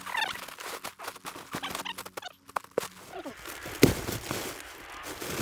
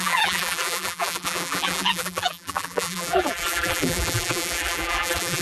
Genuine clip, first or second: first